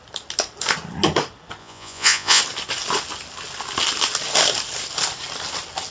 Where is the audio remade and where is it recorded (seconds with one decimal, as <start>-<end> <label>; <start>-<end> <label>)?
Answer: 0.0-1.6 recorded; 1.6-2.4 remade; 2.4-5.9 recorded